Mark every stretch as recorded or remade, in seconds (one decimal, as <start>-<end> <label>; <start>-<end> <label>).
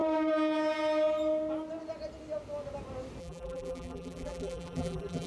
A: 0.0-3.2 recorded; 3.2-5.3 remade